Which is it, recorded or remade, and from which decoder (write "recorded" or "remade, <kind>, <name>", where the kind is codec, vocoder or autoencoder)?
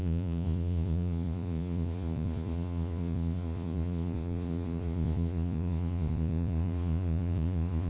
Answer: remade, vocoder, Vocos